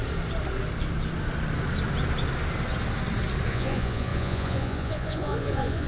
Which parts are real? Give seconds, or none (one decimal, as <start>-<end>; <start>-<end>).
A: 0.0-3.5